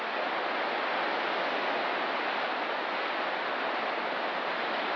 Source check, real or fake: real